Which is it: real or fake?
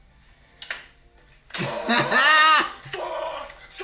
real